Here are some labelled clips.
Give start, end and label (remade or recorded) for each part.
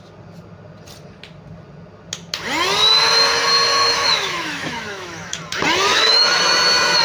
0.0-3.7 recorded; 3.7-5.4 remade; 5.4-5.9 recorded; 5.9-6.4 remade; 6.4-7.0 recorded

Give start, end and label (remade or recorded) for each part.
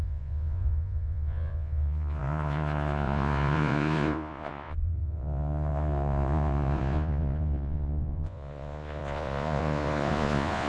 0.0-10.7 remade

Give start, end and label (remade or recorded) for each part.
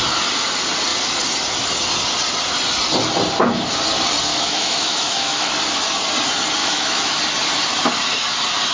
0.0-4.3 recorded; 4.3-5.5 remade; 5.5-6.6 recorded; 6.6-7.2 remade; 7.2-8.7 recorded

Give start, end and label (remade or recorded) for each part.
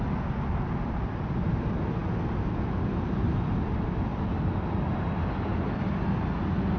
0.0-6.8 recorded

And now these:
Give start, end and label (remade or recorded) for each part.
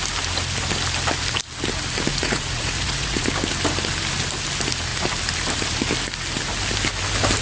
0.0-2.1 recorded; 2.1-3.3 remade; 3.3-7.4 recorded